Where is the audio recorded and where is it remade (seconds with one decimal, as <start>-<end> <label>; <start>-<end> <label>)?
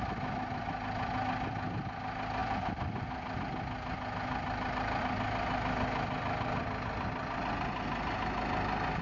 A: 0.0-9.0 recorded